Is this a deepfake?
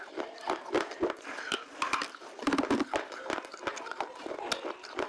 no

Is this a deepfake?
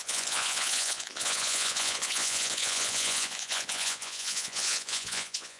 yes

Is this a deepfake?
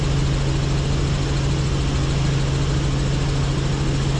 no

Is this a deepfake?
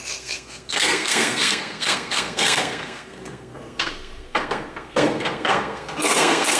yes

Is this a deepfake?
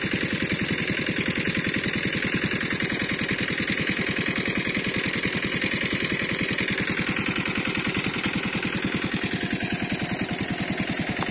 no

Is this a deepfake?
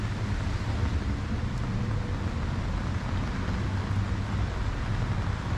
no